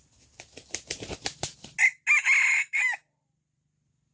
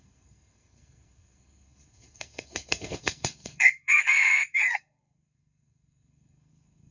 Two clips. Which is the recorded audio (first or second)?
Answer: first